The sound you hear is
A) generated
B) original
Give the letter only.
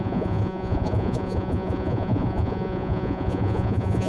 A